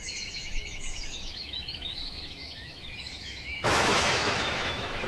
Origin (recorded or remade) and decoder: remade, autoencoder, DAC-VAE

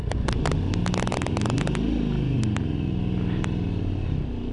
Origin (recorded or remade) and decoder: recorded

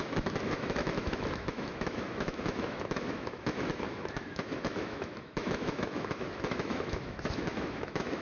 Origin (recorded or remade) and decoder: remade, autoencoder, DAC-VAE